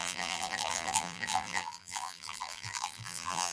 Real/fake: fake